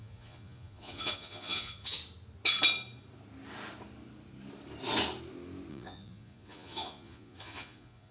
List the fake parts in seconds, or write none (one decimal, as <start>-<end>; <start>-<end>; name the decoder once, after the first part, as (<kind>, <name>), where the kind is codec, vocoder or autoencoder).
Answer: 0.0-2.0 (vocoder, Vocos); 5.7-8.1